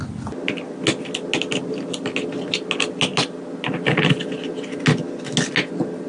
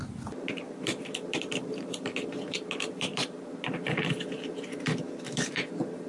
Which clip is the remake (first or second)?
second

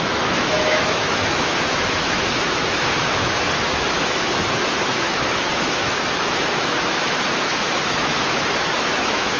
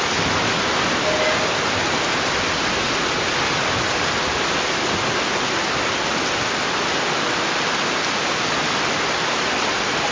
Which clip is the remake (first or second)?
first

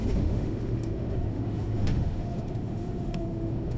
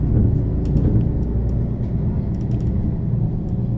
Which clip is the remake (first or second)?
first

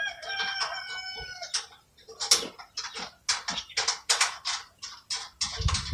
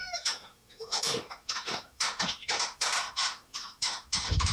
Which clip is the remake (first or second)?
second